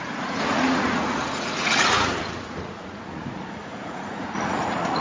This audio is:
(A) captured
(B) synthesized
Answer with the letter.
B